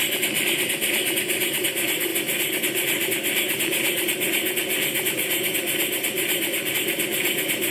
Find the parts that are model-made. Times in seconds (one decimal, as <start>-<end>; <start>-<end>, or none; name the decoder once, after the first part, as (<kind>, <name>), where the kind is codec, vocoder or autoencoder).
none